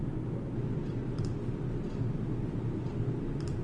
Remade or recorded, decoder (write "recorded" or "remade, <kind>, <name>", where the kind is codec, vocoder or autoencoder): recorded